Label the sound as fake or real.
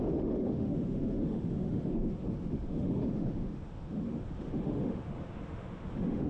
fake